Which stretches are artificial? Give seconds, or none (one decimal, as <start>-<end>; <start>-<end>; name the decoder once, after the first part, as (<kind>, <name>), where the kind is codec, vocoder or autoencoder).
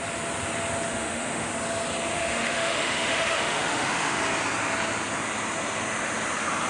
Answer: 0.9-1.5 (autoencoder, DAC-VAE); 2.1-4.2